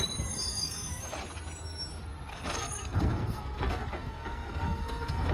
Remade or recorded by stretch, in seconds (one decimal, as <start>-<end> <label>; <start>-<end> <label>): 0.0-0.5 recorded; 0.5-1.0 remade; 1.0-2.3 recorded; 2.3-5.3 remade